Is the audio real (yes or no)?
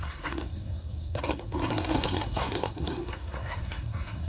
no